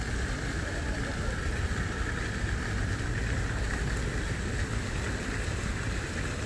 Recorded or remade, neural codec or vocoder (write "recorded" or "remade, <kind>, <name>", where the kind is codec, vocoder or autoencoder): recorded